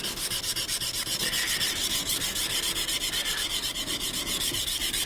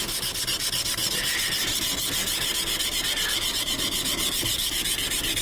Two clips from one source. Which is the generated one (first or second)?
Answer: first